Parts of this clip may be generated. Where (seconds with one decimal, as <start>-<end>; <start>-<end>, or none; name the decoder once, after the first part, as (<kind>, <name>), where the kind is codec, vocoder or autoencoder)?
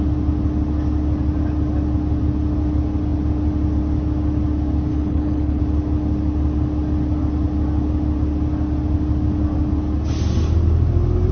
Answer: 4.9-5.6 (codec, HILCodec)